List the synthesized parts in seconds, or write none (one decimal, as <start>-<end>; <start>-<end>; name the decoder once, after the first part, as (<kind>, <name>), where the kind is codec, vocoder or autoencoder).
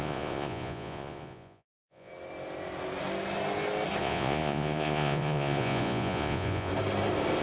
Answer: 0.0-2.1 (vocoder, Vocos); 4.0-6.7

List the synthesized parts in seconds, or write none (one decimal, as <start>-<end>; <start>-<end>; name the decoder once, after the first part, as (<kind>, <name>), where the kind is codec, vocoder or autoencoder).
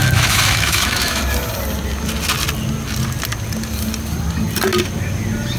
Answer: 0.0-1.2 (autoencoder, DAC-VAE)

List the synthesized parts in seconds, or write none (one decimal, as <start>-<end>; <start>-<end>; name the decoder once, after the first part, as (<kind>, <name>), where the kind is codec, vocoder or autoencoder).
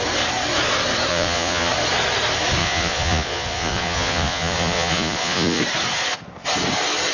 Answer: 1.1-1.7 (vocoder, Vocos); 2.6-5.6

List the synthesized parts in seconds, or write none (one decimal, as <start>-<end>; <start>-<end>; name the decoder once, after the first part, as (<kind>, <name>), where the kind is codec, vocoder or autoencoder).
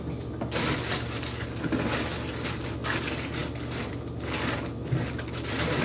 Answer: none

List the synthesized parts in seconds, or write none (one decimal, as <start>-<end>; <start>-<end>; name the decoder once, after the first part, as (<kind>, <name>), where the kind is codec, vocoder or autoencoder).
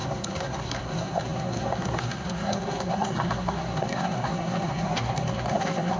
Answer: 0.0-6.0 (codec, SNAC)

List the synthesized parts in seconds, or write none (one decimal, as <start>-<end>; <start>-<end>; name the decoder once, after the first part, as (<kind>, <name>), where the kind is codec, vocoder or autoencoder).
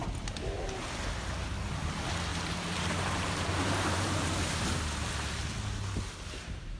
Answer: 2.3-4.8 (vocoder, BigVGAN v2)